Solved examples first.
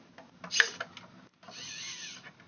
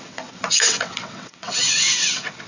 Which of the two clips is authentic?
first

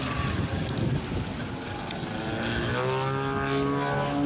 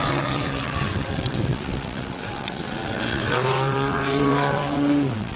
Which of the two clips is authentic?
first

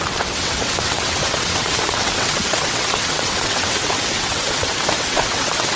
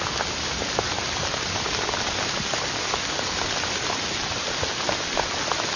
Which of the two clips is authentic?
second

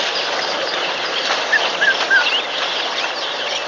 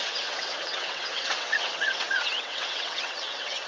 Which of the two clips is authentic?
first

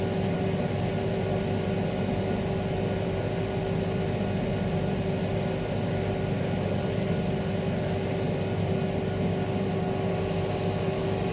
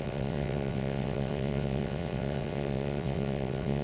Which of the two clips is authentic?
first